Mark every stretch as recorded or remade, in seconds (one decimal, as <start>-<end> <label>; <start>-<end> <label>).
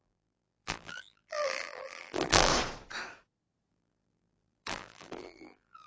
0.0-2.5 remade; 2.5-3.7 recorded; 3.7-5.9 remade